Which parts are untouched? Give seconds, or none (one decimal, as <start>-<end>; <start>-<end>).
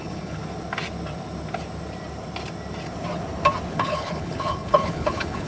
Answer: 0.4-3.7